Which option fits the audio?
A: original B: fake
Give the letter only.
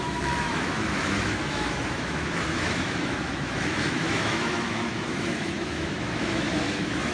B